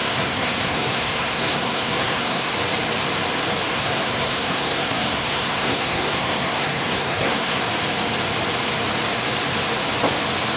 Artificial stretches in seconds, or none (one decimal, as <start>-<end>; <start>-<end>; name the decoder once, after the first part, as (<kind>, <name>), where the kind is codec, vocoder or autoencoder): 0.0-2.5 (codec, SNAC); 3.7-7.6